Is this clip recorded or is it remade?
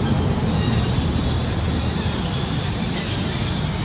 recorded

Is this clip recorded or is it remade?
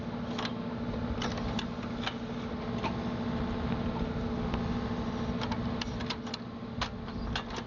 recorded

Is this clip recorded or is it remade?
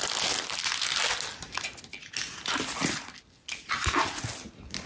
recorded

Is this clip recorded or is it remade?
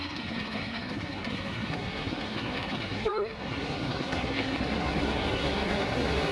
remade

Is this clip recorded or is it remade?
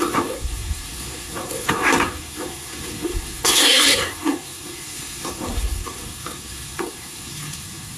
remade